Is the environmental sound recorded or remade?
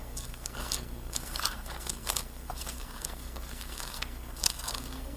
remade